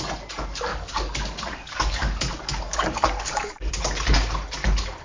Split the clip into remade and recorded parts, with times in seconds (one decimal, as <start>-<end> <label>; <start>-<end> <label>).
0.0-0.7 recorded; 0.7-3.7 remade; 3.7-5.0 recorded